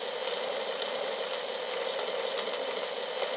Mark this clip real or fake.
fake